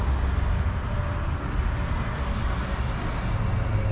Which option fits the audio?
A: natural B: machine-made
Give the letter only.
A